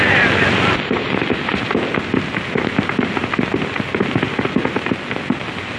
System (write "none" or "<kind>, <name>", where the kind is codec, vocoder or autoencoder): none